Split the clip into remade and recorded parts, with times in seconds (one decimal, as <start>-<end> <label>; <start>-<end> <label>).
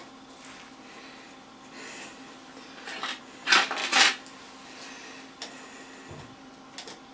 0.0-7.1 recorded